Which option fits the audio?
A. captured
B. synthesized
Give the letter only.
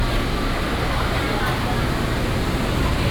A